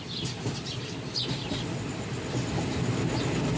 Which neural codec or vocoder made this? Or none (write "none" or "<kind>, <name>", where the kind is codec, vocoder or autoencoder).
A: none